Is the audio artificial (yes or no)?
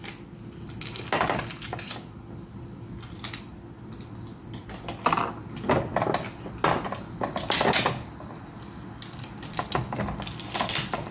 no